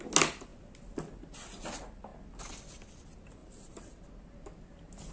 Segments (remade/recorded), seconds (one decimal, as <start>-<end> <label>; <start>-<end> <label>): 0.0-3.4 recorded; 3.4-4.0 remade; 4.0-5.1 recorded